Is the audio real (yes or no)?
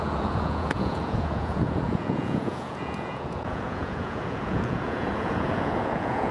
no